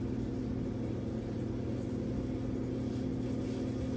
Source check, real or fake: real